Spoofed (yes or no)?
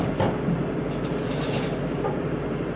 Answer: no